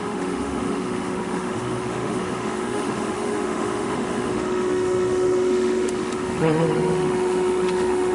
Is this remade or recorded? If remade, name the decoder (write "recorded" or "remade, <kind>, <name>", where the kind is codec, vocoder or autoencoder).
remade, autoencoder, DAC-VAE